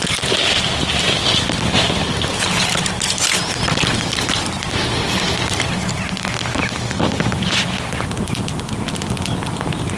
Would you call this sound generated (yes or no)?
no